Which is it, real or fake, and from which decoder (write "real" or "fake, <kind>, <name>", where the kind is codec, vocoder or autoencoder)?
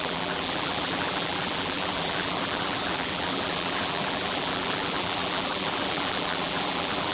fake, vocoder, BigVGAN v2